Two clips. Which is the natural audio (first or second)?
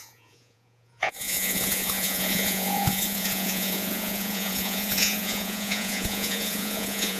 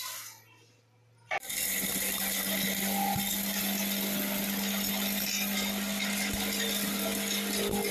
second